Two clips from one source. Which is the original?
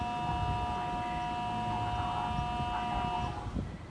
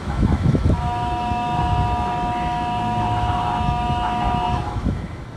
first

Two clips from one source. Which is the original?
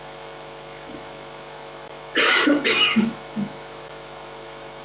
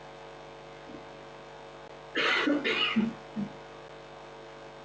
second